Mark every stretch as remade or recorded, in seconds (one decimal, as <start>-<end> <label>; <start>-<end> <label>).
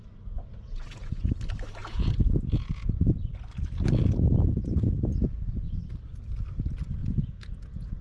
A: 0.0-0.5 recorded; 0.5-1.3 remade; 1.3-1.8 recorded; 1.8-3.4 remade; 3.4-5.2 recorded; 5.2-5.8 remade; 5.8-7.0 recorded; 7.0-8.0 remade